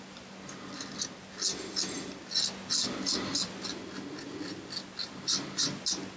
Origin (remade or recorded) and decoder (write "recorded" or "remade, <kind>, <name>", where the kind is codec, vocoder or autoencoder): recorded